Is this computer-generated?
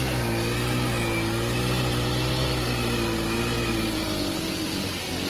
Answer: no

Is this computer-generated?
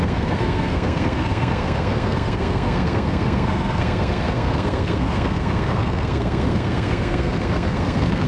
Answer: yes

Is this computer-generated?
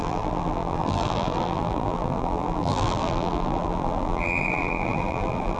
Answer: yes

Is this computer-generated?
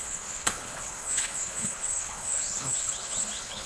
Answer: yes